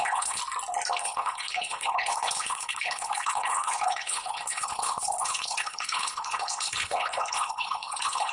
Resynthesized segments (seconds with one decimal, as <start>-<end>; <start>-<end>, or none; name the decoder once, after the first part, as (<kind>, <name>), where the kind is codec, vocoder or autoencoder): 0.0-0.4 (codec, HILCodec); 1.0-8.3